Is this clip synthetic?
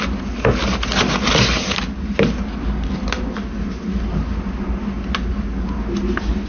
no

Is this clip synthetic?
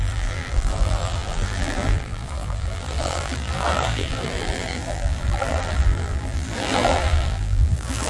yes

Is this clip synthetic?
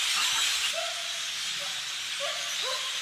no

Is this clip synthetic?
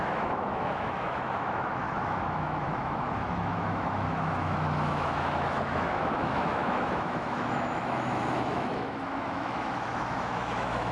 yes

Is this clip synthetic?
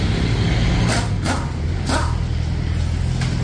no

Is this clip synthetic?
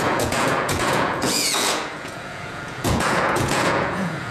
yes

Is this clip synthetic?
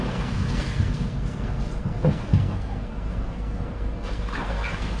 yes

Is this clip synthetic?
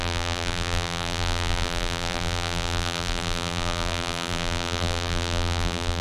yes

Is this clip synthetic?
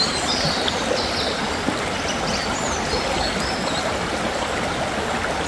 no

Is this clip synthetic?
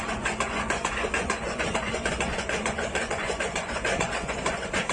yes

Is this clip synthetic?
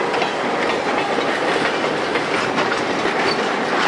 no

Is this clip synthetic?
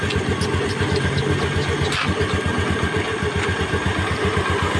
no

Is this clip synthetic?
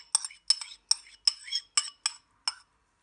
no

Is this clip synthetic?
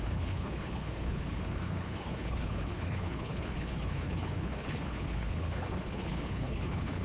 yes